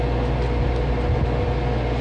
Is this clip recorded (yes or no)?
yes